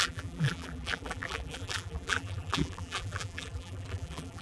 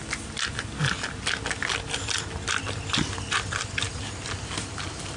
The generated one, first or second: first